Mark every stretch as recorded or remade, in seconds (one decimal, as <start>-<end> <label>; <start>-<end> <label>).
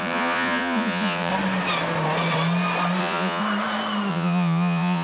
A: 0.0-1.3 remade; 1.3-3.0 recorded; 3.0-3.4 remade; 3.4-4.1 recorded; 4.1-5.0 remade